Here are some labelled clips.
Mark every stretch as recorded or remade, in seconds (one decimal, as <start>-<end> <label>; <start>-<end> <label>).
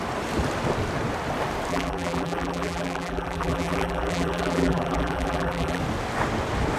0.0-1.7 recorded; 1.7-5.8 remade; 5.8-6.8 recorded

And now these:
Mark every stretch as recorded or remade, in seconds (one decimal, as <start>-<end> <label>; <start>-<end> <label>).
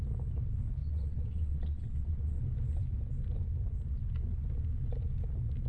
0.0-0.8 recorded; 0.8-2.4 remade; 2.4-5.7 recorded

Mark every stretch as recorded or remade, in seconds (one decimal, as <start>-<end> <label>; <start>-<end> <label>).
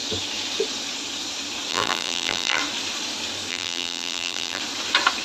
0.0-1.7 recorded; 1.7-2.6 remade; 2.6-3.5 recorded; 3.5-4.6 remade; 4.6-5.2 recorded